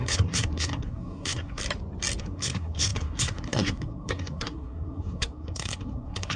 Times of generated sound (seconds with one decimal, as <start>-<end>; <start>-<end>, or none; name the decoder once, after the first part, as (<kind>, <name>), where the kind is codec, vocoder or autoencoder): 0.0-1.6 (codec, SNAC); 2.2-6.4